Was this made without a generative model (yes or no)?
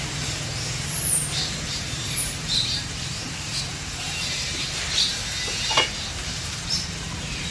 no